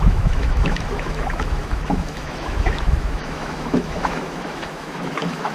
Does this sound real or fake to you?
fake